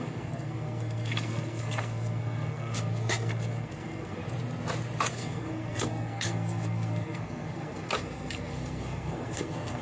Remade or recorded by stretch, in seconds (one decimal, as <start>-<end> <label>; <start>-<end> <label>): 0.0-4.2 remade; 4.2-5.1 recorded; 5.1-9.8 remade